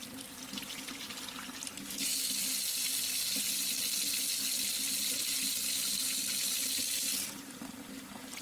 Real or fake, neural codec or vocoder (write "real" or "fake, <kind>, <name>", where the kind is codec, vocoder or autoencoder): real